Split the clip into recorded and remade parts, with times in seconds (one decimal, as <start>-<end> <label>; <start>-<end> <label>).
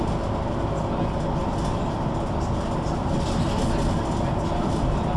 0.0-5.2 recorded